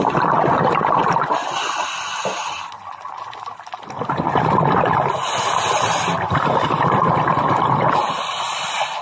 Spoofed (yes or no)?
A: no